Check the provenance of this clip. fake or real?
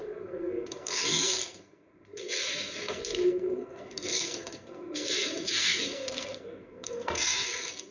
fake